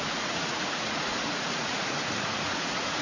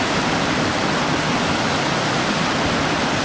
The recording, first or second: second